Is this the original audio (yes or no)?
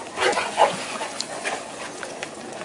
no